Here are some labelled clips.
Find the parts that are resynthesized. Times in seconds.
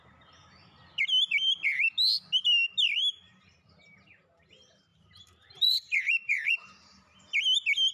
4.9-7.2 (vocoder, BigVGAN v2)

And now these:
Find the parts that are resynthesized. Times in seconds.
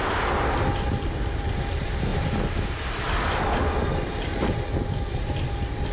2.1-3.4 (vocoder, BigVGAN v2)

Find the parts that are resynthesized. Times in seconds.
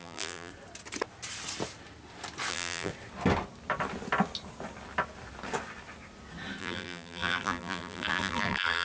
0.0-0.5 (vocoder, BigVGAN v2); 2.5-2.9; 6.6-8.8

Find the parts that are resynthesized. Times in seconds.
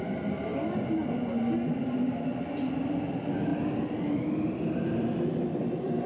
3.5-6.1 (vocoder, BigVGAN v2)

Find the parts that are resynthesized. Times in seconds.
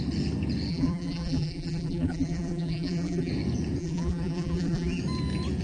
0.7-3.3 (vocoder, BigVGAN v2); 3.8-5.0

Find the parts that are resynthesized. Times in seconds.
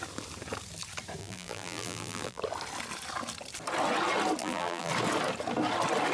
1.2-2.4 (vocoder, BigVGAN v2); 4.4-4.9